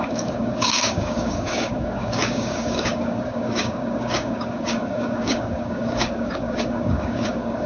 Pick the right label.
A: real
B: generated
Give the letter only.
B